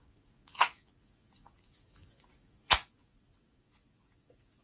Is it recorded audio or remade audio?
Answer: remade